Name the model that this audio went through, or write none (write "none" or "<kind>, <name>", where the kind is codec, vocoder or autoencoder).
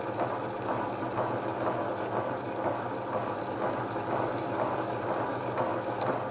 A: none